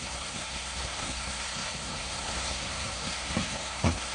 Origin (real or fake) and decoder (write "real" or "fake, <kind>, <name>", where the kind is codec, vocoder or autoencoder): fake, codec, SNAC